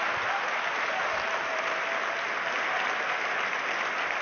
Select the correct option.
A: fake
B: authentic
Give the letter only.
B